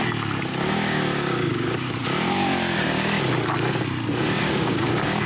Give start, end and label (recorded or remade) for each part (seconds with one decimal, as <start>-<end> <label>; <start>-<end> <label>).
0.0-0.5 recorded; 0.5-3.2 remade; 3.2-4.4 recorded; 4.4-5.3 remade